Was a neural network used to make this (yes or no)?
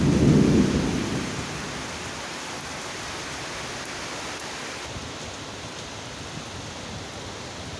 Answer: no